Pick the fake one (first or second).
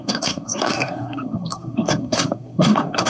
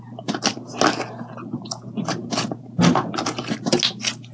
first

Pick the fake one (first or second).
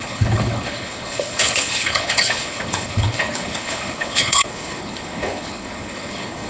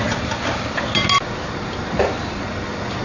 first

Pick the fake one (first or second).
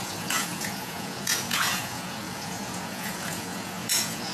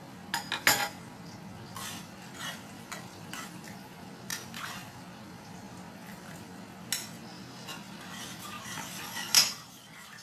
first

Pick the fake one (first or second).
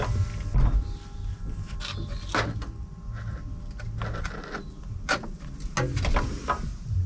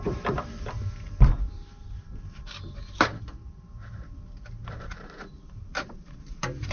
second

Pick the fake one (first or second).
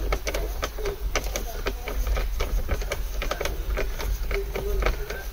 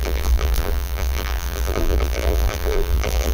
second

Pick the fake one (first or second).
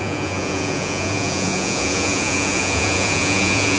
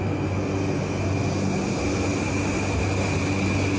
first